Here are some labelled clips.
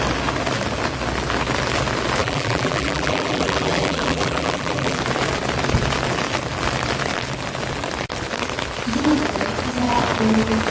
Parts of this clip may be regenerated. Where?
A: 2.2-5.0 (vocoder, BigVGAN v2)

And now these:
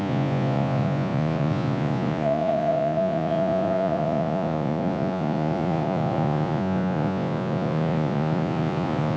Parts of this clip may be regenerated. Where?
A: 0.0-9.2 (vocoder, Vocos)

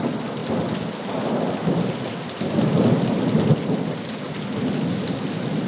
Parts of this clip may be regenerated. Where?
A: none

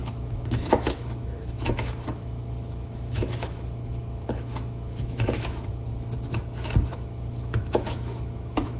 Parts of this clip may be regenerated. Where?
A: 0.0-5.9 (autoencoder, DAC-VAE); 6.9-8.8

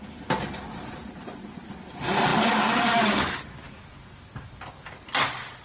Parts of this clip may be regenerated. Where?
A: none

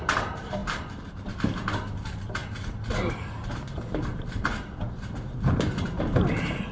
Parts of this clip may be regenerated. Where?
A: 0.0-6.7 (vocoder, BigVGAN v2)

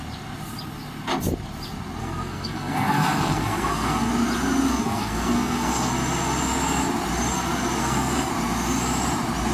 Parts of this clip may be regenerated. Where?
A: 2.0-4.1 (codec, SNAC); 4.7-5.9; 7.8-8.3